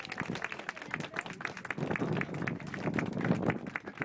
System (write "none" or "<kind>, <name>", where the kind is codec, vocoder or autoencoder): none